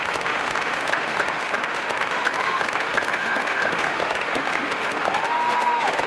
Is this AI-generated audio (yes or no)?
yes